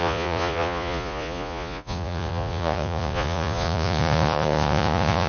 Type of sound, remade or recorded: remade